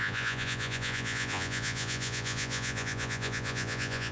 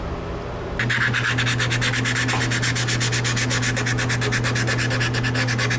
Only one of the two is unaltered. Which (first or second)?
second